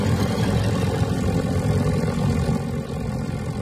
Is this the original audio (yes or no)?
no